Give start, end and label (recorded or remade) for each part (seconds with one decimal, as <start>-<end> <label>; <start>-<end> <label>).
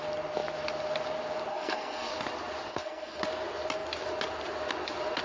0.0-1.5 recorded; 1.5-2.1 remade; 2.1-2.7 recorded; 2.7-3.2 remade; 3.2-5.2 recorded